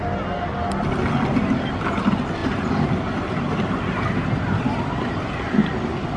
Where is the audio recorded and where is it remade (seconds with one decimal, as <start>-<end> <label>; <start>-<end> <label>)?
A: 0.0-6.2 recorded